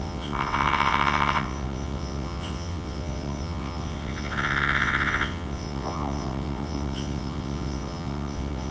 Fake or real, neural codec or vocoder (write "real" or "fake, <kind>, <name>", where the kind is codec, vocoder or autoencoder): fake, vocoder, WaveNeXt